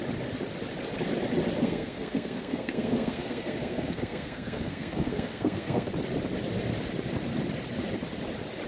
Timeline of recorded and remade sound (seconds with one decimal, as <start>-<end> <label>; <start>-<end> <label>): 0.0-1.6 recorded; 1.6-5.9 remade; 5.9-8.7 recorded